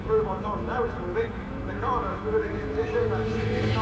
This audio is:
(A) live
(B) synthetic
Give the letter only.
B